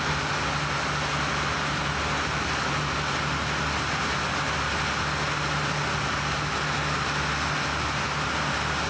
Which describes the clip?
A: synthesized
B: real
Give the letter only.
B